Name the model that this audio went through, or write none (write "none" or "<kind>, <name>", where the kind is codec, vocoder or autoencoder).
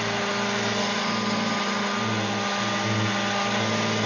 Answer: none